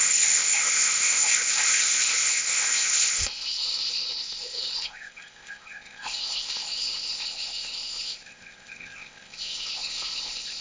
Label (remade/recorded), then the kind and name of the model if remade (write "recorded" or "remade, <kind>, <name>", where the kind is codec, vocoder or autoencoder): remade, codec, ZipCodec